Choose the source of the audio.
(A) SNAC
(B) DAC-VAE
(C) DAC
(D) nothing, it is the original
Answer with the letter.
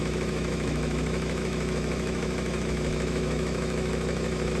B